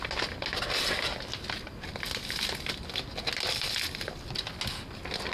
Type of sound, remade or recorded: recorded